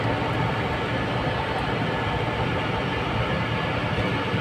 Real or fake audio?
real